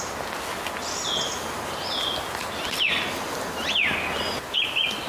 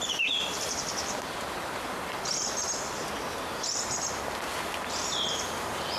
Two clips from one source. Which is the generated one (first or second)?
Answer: second